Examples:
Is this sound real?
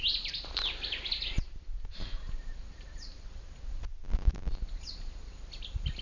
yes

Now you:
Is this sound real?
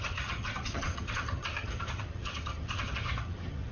no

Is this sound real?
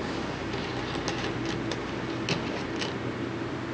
yes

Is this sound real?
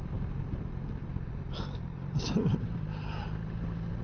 yes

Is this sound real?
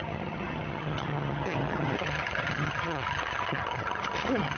no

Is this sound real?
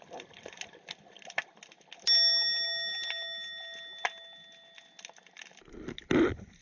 yes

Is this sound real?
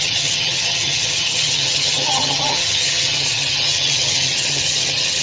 no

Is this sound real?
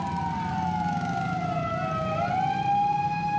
yes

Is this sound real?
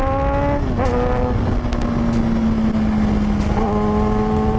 yes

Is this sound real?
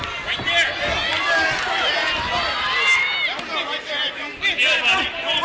yes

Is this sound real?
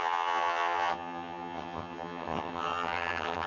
no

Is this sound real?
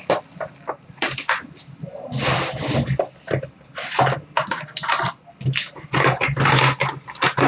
yes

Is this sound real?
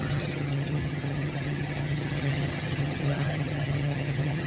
no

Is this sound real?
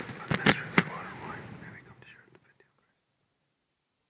yes